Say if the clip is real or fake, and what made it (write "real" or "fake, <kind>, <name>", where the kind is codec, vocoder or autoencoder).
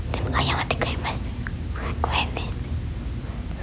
real